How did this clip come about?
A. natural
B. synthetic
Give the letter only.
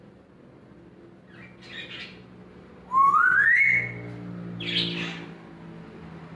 A